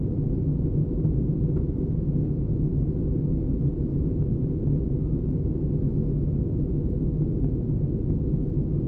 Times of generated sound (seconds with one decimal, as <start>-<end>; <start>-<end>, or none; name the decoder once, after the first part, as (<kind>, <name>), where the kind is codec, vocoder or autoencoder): none

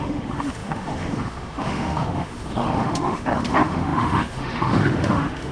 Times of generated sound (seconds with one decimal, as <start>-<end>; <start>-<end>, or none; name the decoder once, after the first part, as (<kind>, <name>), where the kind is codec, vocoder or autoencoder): 0.0-5.5 (autoencoder, DAC-VAE)

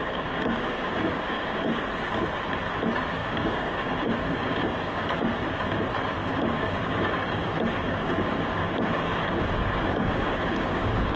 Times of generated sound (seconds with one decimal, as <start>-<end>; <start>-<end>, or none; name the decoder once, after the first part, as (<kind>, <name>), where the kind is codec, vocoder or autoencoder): 0.0-1.8 (codec, DAC); 3.2-5.2; 6.2-11.2

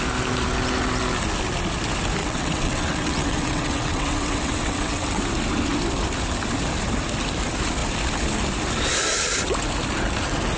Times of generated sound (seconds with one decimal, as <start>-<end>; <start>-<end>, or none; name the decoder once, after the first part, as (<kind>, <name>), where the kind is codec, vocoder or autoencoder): 2.2-5.2 (vocoder, WaveNeXt)

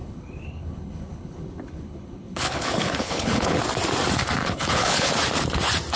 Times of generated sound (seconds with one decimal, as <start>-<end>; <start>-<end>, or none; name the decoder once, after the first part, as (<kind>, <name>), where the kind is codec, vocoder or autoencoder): 0.0-3.6 (codec, HILCodec); 4.4-5.1

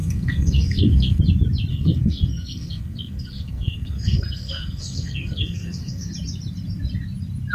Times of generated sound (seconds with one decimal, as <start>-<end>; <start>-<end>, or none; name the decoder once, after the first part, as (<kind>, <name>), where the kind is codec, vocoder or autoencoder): 0.0-1.2 (codec, SNAC); 1.7-6.1

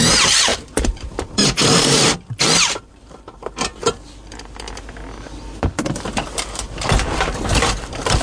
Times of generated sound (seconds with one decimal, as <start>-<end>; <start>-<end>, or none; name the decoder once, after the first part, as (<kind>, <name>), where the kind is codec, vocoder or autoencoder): 0.0-3.7 (vocoder, BigVGAN v2); 7.7-8.2